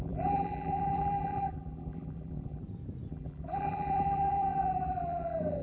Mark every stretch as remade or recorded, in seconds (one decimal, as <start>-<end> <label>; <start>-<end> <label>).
0.0-2.6 remade; 2.6-3.1 recorded; 3.1-5.6 remade